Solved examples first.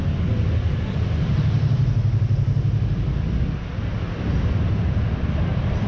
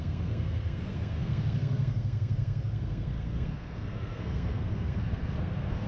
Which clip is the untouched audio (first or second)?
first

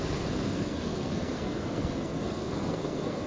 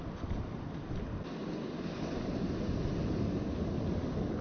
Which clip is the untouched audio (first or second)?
second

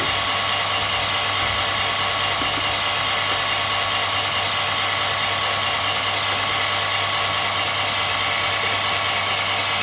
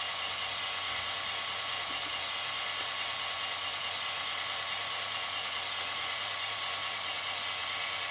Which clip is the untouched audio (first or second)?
first